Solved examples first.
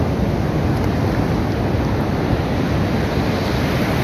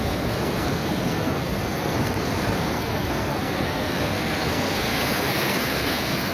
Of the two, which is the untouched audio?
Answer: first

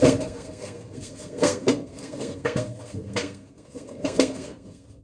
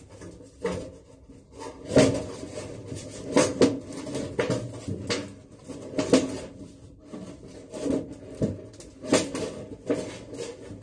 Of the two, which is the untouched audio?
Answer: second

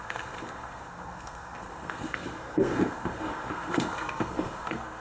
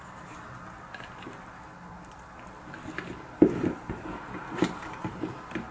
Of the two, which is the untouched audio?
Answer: second